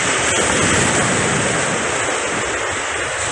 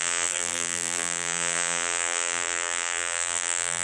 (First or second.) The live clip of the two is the first